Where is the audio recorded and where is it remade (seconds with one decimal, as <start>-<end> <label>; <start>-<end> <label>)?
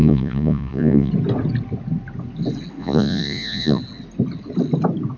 0.0-1.1 remade; 1.1-2.8 recorded; 2.8-3.8 remade; 3.8-5.2 recorded